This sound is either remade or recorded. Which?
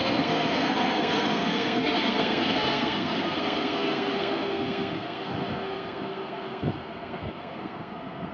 remade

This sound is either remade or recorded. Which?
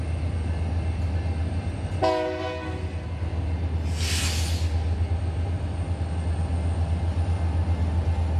recorded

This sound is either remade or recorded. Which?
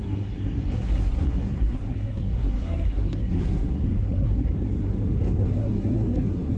remade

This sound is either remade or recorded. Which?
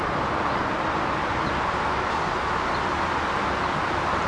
recorded